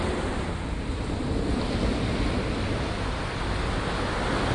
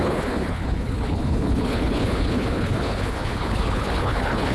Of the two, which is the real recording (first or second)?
first